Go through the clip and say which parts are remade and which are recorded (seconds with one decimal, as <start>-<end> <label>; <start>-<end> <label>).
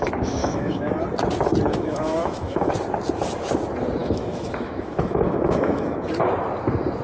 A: 0.0-0.4 recorded; 0.4-0.9 remade; 0.9-1.7 recorded; 1.7-2.7 remade; 2.7-4.0 recorded; 4.0-6.1 remade; 6.1-7.0 recorded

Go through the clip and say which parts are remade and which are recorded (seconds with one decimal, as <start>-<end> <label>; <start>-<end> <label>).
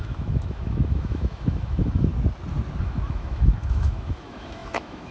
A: 0.0-2.1 remade; 2.1-2.8 recorded; 2.8-5.1 remade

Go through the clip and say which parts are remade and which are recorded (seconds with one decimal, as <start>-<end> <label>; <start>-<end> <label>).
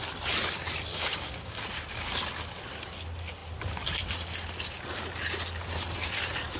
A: 0.0-0.9 recorded; 0.9-1.6 remade; 1.6-6.6 recorded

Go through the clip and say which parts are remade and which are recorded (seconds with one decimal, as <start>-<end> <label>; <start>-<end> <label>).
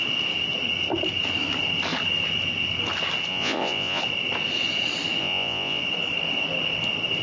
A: 0.0-3.3 recorded; 3.3-4.0 remade; 4.0-5.2 recorded; 5.2-5.8 remade; 5.8-7.2 recorded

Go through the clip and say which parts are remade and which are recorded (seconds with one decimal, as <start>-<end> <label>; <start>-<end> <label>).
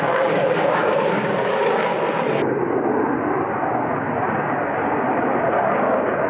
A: 0.0-1.9 remade; 1.9-5.7 recorded; 5.7-6.3 remade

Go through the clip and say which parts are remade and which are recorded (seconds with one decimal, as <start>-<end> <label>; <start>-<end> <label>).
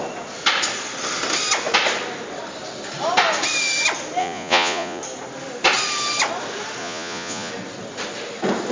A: 0.0-4.2 recorded; 4.2-5.0 remade; 5.0-6.8 recorded; 6.8-7.5 remade; 7.5-8.7 recorded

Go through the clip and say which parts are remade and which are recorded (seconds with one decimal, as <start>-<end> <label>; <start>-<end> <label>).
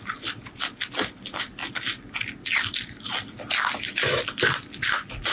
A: 0.0-5.3 recorded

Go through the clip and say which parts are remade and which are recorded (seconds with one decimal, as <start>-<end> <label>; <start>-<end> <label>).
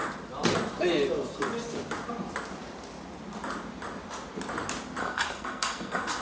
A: 0.0-5.0 recorded; 5.0-6.2 remade